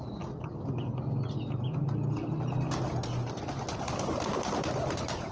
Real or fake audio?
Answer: real